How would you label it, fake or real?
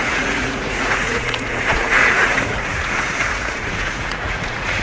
fake